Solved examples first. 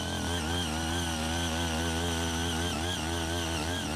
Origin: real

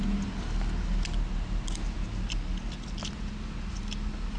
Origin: real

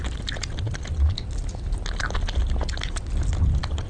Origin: real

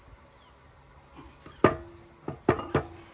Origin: real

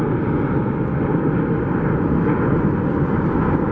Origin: real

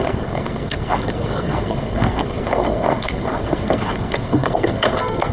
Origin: fake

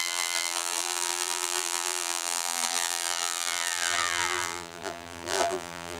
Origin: fake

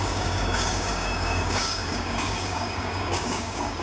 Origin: fake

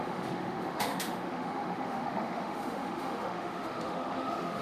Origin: fake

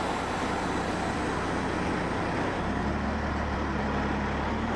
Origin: real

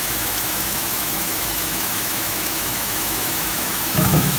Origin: fake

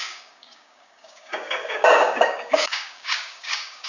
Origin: fake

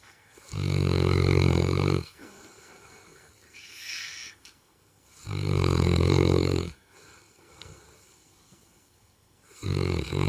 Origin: fake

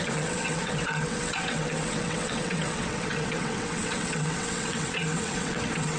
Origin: fake